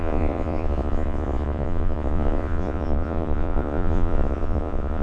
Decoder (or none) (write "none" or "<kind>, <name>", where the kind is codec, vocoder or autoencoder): vocoder, Vocos